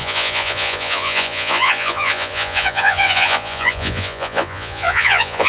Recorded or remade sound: remade